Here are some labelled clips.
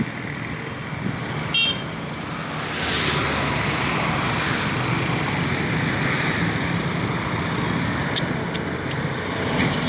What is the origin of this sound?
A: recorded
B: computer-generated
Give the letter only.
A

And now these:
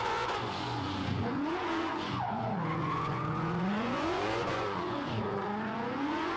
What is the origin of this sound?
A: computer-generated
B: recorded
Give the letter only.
A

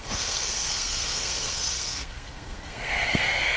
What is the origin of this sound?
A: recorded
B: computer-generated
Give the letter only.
B